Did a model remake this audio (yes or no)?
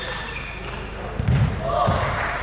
no